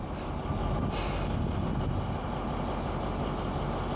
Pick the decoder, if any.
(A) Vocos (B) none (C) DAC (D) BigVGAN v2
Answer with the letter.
B